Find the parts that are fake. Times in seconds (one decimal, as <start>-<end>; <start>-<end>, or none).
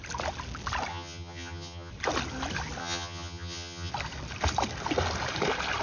0.9-1.9; 2.8-3.9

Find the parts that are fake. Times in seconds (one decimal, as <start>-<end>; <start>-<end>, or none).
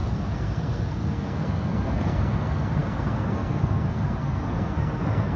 0.0-5.4